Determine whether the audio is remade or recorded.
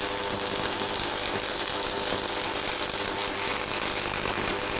recorded